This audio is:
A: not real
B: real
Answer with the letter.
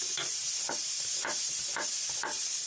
B